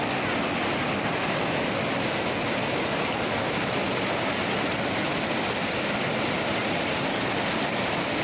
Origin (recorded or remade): recorded